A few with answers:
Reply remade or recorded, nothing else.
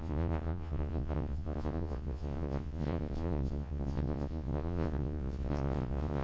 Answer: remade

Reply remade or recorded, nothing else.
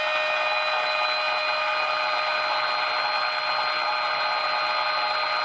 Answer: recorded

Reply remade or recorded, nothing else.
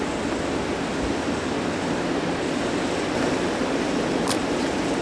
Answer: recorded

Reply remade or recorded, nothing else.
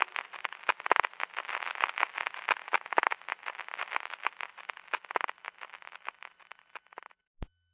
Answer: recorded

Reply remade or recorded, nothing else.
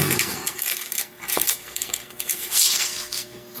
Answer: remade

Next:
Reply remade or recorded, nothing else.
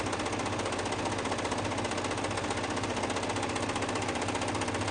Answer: recorded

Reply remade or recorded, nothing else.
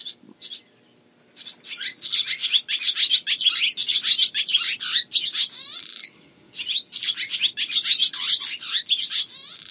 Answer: recorded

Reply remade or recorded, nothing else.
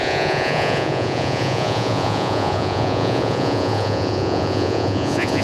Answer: remade